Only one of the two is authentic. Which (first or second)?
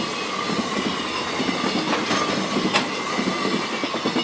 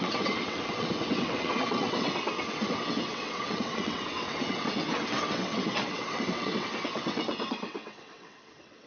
first